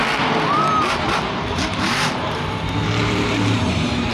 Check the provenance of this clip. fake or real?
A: fake